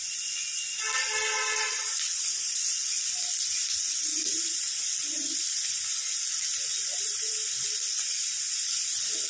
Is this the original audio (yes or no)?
yes